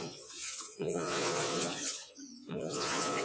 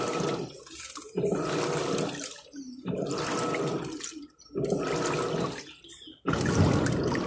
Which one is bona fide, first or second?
second